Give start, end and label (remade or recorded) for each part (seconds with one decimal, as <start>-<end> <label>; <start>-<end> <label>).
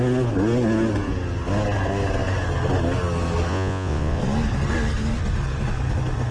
0.0-3.5 recorded; 3.5-4.2 remade; 4.2-6.3 recorded